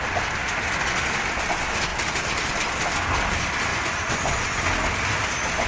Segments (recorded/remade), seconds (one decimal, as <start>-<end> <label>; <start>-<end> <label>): 0.0-3.7 recorded; 3.7-4.6 remade; 4.6-5.7 recorded

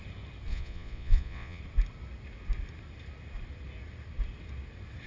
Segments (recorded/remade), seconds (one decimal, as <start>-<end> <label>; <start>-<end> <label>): 0.0-0.5 recorded; 0.5-1.6 remade; 1.6-5.1 recorded